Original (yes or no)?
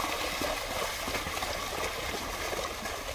yes